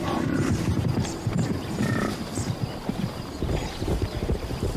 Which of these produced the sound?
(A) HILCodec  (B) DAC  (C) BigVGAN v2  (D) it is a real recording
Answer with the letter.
C